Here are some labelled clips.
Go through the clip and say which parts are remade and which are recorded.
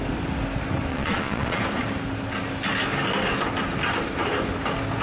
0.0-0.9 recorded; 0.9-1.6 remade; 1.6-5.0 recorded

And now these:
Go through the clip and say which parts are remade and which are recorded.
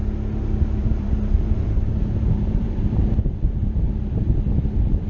0.0-0.8 recorded; 0.8-3.9 remade; 3.9-5.1 recorded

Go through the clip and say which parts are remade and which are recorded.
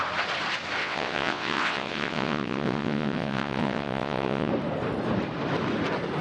0.0-0.8 recorded; 0.8-4.5 remade; 4.5-6.2 recorded